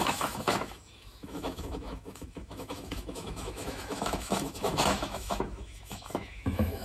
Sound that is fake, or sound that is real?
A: fake